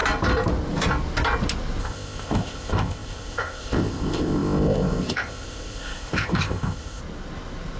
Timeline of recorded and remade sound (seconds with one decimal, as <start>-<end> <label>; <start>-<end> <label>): 0.0-1.8 recorded; 1.8-7.0 remade; 7.0-7.8 recorded